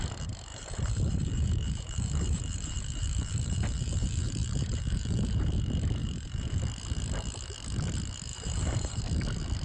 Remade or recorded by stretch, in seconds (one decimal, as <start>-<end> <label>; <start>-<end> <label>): 0.0-0.5 recorded; 0.5-5.5 remade; 5.5-6.0 recorded; 6.0-6.6 remade; 6.6-8.3 recorded; 8.3-9.0 remade; 9.0-9.6 recorded